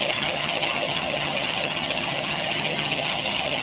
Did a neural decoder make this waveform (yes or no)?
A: yes